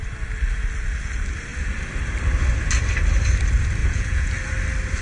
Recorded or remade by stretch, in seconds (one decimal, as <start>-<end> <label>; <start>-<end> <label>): 0.0-3.8 recorded; 3.8-4.3 remade; 4.3-5.0 recorded